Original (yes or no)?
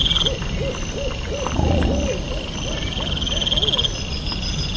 yes